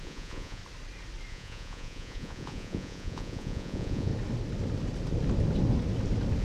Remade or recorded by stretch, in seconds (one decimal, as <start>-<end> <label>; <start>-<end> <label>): 0.0-0.6 remade; 0.6-1.3 recorded; 1.3-4.1 remade; 4.1-6.4 recorded